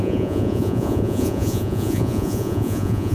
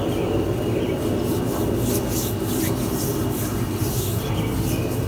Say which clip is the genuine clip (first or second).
second